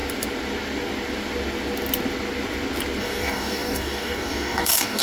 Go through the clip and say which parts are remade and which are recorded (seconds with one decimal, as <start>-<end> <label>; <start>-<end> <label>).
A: 0.0-3.0 recorded; 3.0-5.0 remade